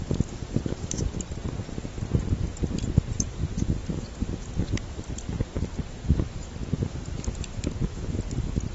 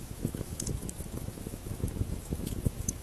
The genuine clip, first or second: first